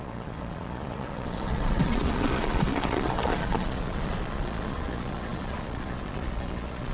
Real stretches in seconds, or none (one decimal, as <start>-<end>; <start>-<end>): none